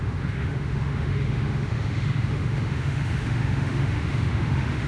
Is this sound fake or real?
fake